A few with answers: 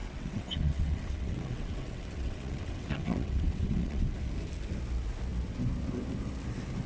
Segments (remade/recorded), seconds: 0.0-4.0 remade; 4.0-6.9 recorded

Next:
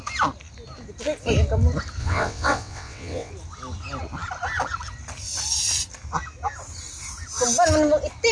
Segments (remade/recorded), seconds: 0.0-2.0 recorded; 2.0-3.3 remade; 3.3-8.3 recorded

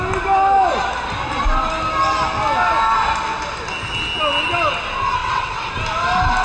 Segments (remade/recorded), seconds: 0.0-5.2 recorded; 5.2-5.7 remade; 5.7-6.4 recorded

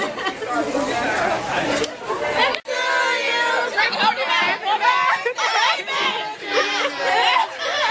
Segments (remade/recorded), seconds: 0.0-7.9 recorded

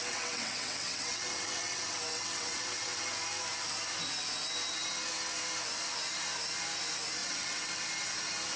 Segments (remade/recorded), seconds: 0.0-3.0 remade; 3.0-7.2 recorded; 7.2-7.7 remade; 7.7-8.6 recorded

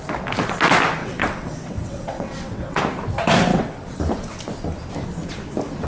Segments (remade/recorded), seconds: 0.0-1.0 recorded; 1.0-2.8 remade; 2.8-3.5 recorded; 3.5-4.0 remade; 4.0-5.9 recorded

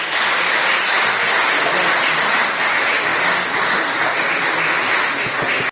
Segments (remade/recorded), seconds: 0.0-5.7 recorded